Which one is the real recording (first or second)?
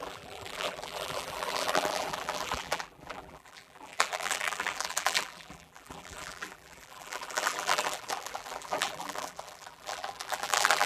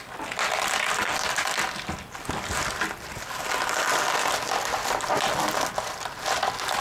second